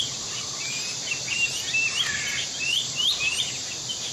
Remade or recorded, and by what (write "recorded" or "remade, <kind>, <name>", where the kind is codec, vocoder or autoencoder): remade, vocoder, BigVGAN v2